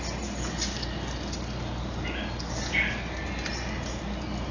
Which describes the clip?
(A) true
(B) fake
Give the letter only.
A